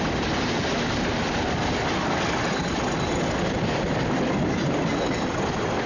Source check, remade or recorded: recorded